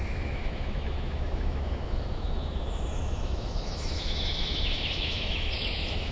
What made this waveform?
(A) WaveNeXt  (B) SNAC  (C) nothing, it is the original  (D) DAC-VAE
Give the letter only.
D